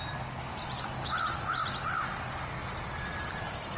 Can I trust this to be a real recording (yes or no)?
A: yes